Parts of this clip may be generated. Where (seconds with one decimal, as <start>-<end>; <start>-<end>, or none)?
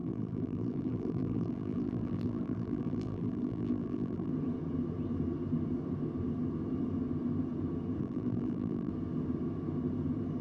0.0-4.3; 8.0-8.9